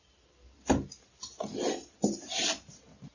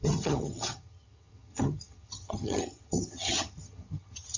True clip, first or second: first